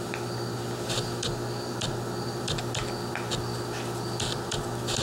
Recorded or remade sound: recorded